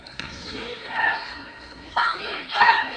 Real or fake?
fake